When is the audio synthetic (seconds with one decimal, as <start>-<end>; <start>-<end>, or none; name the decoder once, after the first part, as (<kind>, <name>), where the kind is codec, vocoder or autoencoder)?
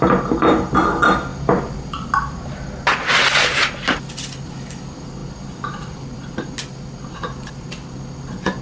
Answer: 1.3-2.7 (vocoder, BigVGAN v2); 5.2-6.5; 7.8-8.6